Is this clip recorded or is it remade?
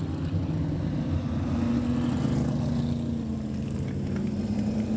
recorded